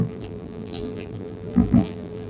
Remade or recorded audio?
remade